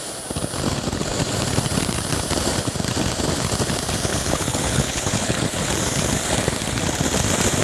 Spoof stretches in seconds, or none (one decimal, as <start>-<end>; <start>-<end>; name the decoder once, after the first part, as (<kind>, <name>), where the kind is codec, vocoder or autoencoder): 4.1-5.7 (codec, HILCodec)